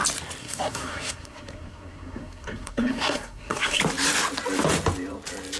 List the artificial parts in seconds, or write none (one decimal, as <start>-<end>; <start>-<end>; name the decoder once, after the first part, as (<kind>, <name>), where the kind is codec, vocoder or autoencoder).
0.4-3.8 (codec, SNAC)